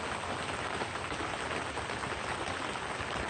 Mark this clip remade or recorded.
recorded